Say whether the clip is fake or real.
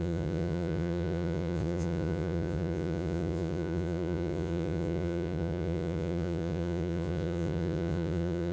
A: fake